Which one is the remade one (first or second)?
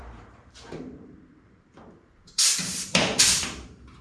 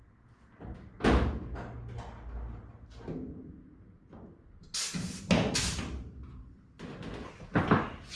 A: first